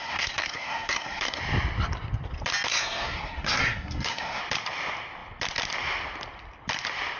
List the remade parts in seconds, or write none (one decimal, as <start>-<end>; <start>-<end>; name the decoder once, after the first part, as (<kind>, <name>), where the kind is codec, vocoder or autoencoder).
0.0-1.4 (codec, SNAC); 2.7-4.4